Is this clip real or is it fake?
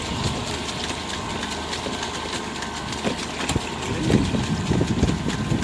real